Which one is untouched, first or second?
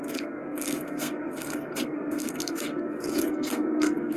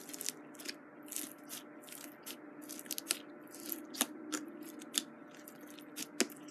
second